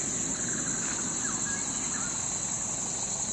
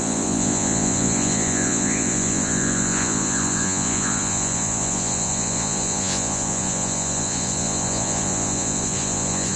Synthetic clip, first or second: second